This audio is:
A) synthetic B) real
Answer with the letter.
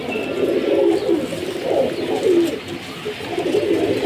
B